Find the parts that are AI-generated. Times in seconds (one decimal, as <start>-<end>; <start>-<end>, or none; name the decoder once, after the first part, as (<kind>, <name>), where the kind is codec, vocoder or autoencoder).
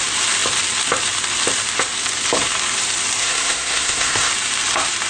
3.2-4.3 (codec, SNAC)